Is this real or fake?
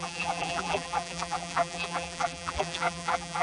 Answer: fake